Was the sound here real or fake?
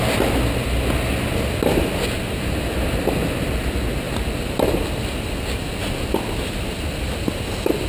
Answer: real